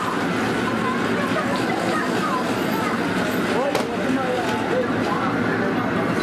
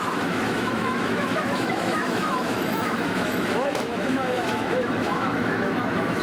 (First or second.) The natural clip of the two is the first